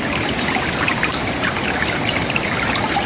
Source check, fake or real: real